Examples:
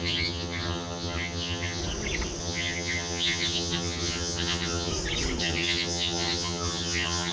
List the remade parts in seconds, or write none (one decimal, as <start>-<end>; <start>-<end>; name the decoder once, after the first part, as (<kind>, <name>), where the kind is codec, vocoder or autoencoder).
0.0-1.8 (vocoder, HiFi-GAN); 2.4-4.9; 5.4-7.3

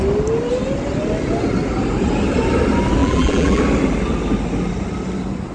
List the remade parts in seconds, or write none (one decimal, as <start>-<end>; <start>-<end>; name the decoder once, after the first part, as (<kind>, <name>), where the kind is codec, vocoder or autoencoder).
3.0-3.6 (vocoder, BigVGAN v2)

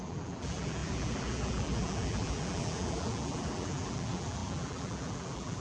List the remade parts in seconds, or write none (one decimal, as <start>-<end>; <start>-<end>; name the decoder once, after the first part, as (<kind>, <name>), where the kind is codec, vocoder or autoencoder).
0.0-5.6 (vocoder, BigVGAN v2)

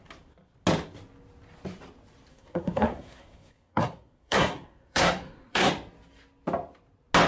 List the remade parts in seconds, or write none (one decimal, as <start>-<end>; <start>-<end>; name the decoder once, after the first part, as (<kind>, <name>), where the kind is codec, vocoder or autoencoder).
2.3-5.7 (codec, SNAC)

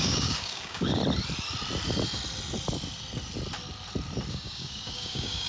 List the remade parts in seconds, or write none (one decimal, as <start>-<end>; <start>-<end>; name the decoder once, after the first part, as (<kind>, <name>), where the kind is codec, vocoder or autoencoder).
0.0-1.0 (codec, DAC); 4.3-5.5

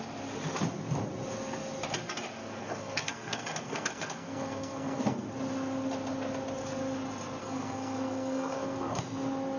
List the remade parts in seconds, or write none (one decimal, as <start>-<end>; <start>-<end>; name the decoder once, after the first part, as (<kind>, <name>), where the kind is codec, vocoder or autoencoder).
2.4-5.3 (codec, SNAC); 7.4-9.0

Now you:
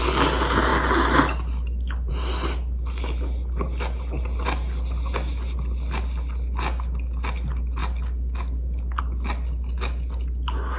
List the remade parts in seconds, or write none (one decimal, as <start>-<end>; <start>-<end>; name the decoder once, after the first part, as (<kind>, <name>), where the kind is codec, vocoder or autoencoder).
none

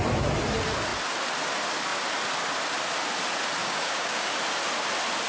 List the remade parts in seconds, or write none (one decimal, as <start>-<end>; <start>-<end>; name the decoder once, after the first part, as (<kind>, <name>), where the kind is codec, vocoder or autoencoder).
3.6-4.3 (codec, DAC)